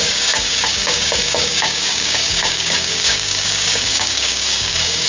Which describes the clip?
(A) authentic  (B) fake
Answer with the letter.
B